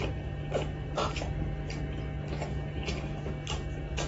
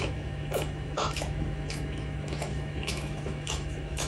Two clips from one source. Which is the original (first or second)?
first